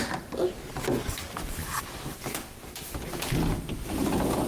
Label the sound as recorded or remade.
recorded